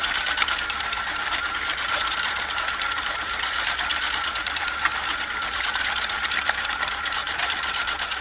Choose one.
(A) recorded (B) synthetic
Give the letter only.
B